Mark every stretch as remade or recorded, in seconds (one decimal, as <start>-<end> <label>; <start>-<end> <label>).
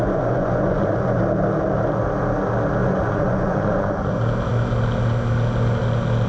0.0-1.2 remade; 1.2-2.8 recorded; 2.8-4.1 remade; 4.1-6.3 recorded